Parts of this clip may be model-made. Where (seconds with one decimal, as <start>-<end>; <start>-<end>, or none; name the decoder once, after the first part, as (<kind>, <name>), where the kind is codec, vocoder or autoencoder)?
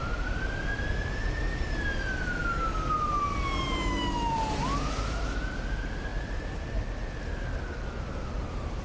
none